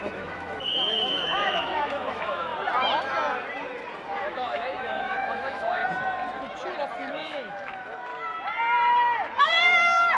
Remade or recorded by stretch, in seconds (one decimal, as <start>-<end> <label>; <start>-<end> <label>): 0.0-2.5 remade; 2.5-4.2 recorded; 4.2-5.8 remade; 5.8-7.1 recorded; 7.1-8.1 remade; 8.1-9.4 recorded; 9.4-10.2 remade